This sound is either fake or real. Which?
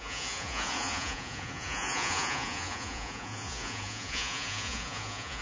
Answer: fake